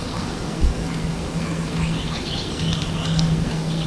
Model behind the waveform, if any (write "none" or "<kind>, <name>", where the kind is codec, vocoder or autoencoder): codec, SNAC